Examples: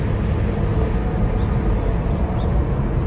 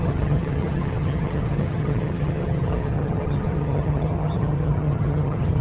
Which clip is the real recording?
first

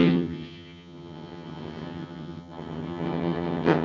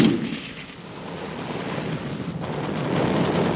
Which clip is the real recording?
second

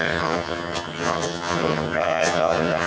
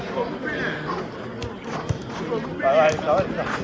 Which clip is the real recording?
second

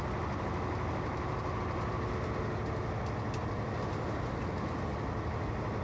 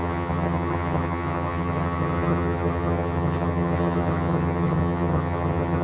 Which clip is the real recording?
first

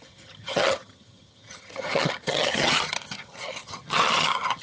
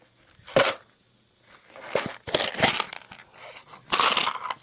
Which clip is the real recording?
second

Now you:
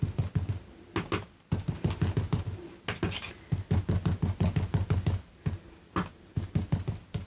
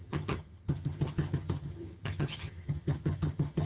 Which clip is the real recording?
first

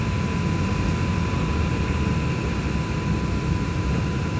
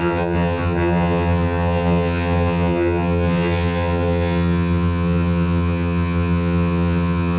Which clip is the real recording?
first